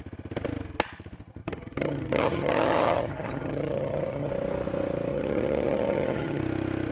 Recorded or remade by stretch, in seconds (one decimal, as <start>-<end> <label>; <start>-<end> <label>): 0.0-1.4 recorded; 1.4-4.3 remade; 4.3-5.1 recorded; 5.1-6.4 remade; 6.4-6.9 recorded